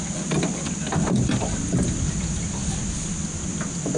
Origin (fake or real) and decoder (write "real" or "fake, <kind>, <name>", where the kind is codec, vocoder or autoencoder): real